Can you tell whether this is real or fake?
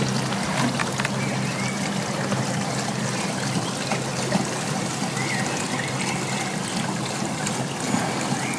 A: real